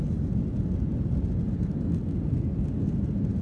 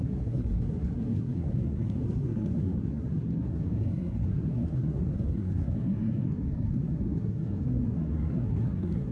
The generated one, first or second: second